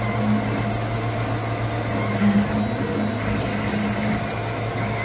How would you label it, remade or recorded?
recorded